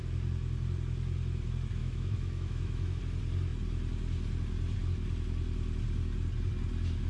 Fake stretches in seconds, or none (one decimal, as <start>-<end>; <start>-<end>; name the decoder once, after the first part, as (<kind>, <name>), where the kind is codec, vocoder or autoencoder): 1.8-3.0 (autoencoder, DAC-VAE)